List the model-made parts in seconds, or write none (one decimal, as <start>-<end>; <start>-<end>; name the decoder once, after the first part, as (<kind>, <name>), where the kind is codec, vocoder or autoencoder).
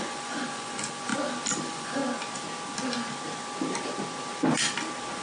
0.0-1.1 (vocoder, Vocos); 1.6-2.0